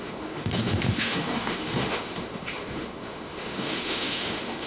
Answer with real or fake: fake